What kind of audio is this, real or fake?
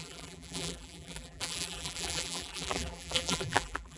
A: fake